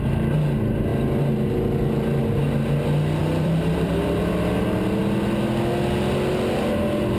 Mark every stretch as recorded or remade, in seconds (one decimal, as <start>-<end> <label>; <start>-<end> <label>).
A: 0.0-3.2 recorded; 3.2-4.2 remade; 4.2-7.2 recorded